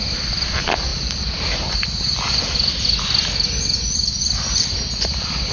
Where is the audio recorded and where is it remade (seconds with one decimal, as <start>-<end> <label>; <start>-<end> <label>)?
0.0-5.5 recorded